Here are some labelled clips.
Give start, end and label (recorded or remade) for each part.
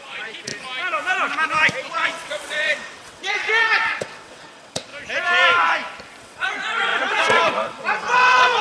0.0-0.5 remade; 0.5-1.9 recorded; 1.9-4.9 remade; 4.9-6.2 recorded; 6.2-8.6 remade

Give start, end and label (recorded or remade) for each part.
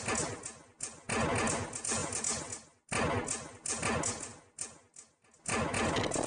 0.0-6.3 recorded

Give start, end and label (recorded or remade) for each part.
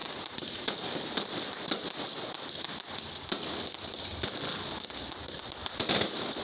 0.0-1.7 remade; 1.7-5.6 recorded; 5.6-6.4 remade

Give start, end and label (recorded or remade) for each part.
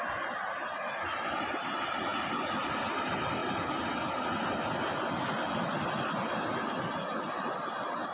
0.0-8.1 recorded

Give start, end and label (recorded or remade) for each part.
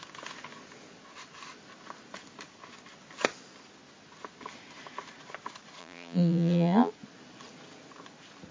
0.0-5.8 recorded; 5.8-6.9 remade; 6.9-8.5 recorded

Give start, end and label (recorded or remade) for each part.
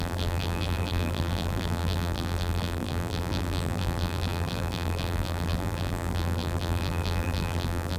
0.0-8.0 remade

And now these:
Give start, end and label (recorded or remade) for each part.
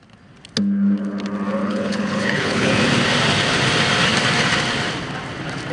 0.0-1.6 recorded; 1.6-2.7 remade; 2.7-5.7 recorded